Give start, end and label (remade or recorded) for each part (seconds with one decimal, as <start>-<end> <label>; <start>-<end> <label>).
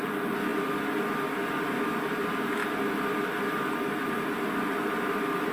0.0-5.5 recorded